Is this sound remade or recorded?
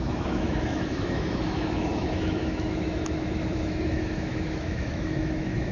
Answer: remade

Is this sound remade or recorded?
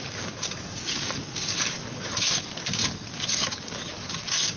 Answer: remade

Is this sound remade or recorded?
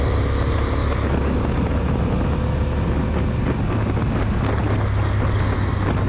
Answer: recorded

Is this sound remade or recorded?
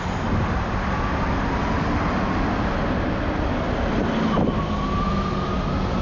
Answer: recorded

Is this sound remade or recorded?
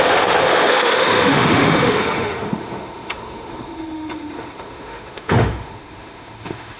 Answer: remade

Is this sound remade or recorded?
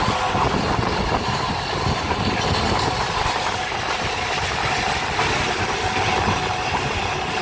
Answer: recorded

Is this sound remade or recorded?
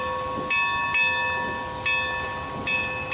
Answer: recorded